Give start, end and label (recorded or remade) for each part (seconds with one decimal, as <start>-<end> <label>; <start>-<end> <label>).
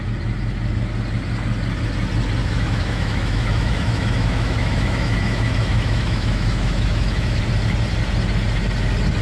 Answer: 0.0-2.4 recorded; 2.4-7.4 remade; 7.4-9.2 recorded